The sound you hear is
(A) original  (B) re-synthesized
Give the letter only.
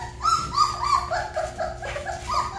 A